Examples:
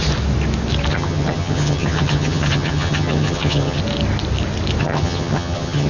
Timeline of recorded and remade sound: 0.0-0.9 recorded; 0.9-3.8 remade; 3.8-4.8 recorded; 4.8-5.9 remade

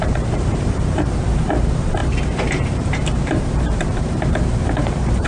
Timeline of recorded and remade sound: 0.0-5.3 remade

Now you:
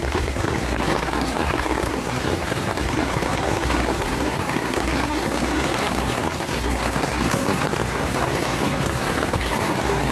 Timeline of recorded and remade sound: 0.0-10.1 remade

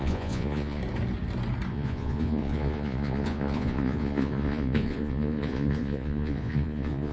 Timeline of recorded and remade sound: 0.0-0.8 remade; 0.8-1.7 recorded; 1.7-7.1 remade

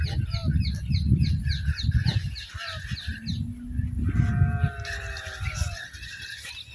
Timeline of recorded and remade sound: 0.0-6.7 recorded

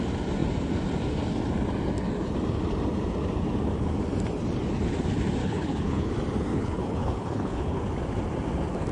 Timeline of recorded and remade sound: 0.0-5.4 recorded; 5.4-6.1 remade; 6.1-6.5 recorded; 6.5-7.8 remade; 7.8-8.9 recorded